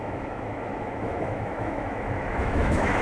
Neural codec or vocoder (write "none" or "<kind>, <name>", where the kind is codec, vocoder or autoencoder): autoencoder, DAC-VAE